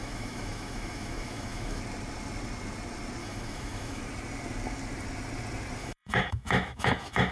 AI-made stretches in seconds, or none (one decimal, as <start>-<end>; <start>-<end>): 0.0-1.8; 3.2-4.0; 5.8-7.3

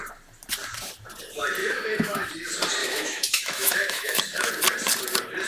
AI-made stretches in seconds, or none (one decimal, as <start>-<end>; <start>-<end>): 1.6-2.3; 2.8-4.5